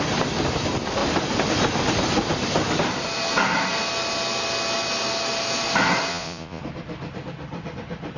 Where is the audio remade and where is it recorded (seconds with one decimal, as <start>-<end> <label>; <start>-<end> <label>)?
0.0-6.1 recorded; 6.1-6.6 remade; 6.6-8.2 recorded